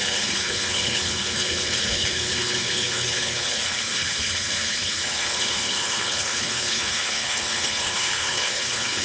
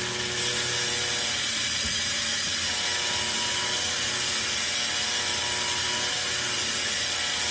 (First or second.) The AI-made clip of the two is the first